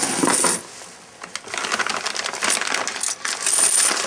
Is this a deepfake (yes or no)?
no